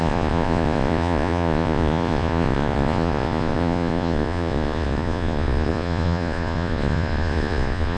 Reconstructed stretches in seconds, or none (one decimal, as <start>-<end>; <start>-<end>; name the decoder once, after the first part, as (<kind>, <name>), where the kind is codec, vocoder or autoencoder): 0.0-8.0 (vocoder, Vocos)